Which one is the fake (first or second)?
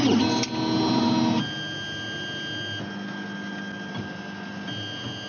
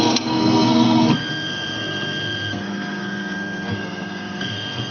second